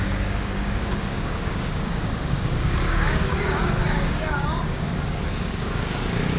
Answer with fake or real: fake